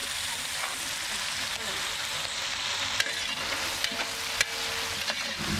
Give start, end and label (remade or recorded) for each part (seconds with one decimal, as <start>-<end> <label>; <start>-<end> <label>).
0.0-5.6 recorded